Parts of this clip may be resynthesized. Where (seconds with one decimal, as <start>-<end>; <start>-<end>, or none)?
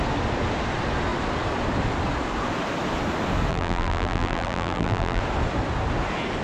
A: 3.5-5.2